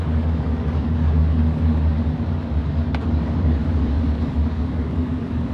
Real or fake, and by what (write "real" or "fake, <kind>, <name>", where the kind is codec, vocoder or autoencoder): fake, codec, DAC